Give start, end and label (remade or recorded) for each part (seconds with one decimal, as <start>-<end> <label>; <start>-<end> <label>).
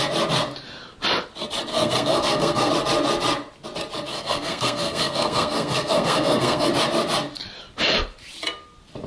0.0-1.7 recorded; 1.7-2.7 remade; 2.7-4.1 recorded; 4.1-6.7 remade; 6.7-9.1 recorded